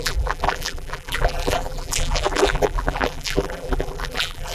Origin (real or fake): fake